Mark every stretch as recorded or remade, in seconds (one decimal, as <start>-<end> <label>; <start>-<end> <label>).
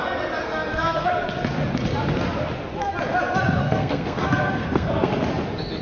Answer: 0.0-0.4 recorded; 0.4-1.1 remade; 1.1-3.6 recorded; 3.6-5.1 remade; 5.1-5.8 recorded